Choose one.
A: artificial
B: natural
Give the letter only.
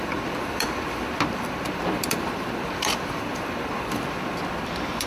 A